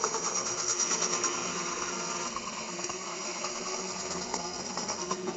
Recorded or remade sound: remade